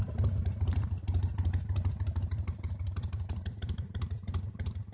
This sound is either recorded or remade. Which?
remade